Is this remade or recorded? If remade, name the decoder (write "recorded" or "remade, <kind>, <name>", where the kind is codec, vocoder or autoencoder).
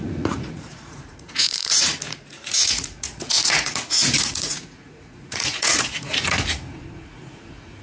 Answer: remade, vocoder, Vocos